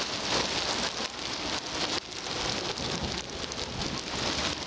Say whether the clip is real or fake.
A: real